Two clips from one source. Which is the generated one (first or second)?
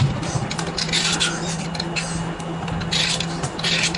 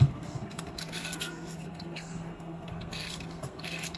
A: second